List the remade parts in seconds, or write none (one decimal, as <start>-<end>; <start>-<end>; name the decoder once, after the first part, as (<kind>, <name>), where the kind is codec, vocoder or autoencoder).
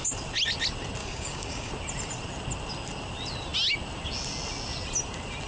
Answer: 1.0-1.7 (codec, DAC)